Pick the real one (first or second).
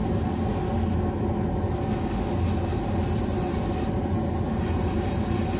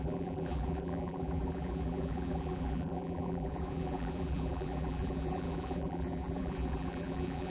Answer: first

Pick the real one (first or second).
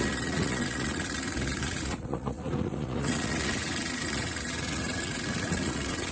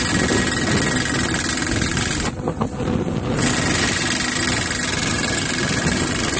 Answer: second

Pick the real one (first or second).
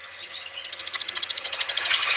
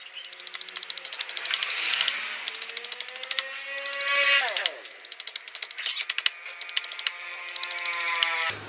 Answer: second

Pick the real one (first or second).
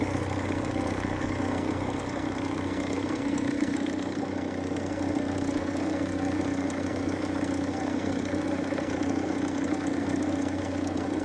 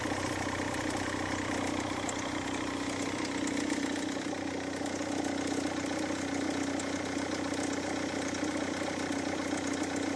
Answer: second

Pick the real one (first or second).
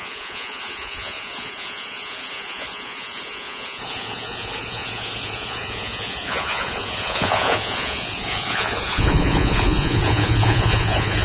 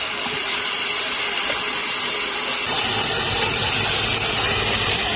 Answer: second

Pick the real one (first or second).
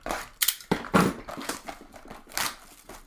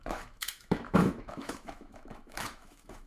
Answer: first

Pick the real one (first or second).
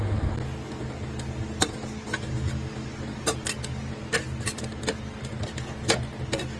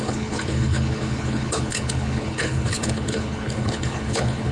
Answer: first